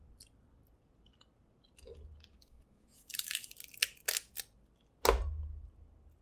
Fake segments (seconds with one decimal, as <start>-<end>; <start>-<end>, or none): 2.3-3.5